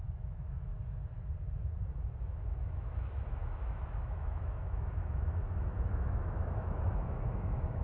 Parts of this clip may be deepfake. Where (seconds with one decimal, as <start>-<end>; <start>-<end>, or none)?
0.0-0.7; 2.2-7.8